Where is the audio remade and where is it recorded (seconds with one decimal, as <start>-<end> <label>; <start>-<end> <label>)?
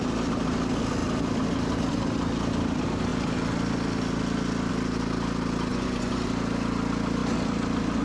0.0-5.7 recorded; 5.7-6.2 remade; 6.2-8.0 recorded